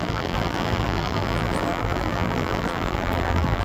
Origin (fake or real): fake